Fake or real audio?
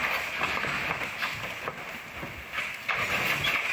real